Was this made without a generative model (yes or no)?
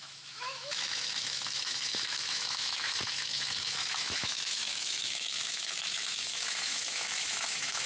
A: no